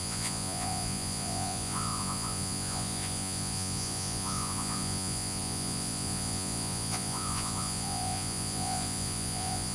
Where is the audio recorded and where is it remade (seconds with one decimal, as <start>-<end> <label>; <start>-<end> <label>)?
0.0-9.7 remade